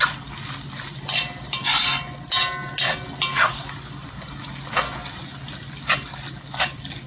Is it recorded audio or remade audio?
recorded